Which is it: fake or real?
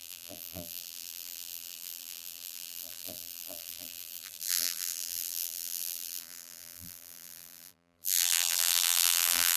fake